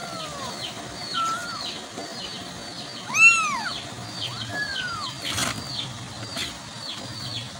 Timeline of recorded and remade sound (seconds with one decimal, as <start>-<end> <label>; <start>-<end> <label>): 0.0-7.6 recorded